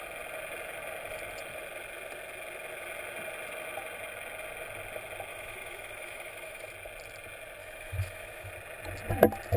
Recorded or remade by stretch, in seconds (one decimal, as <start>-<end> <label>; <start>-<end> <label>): 0.0-5.3 recorded; 5.3-6.7 remade; 6.7-7.6 recorded; 7.6-8.5 remade; 8.5-9.6 recorded